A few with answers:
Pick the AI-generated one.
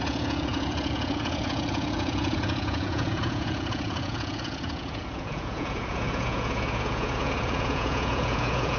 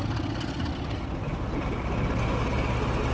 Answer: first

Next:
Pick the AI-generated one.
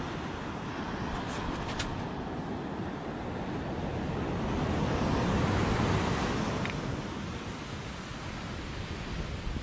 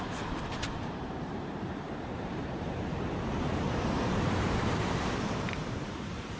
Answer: second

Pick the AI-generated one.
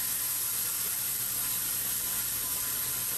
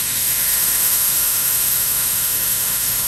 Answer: second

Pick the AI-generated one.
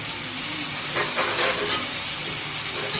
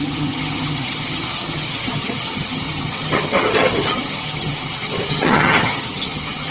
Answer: second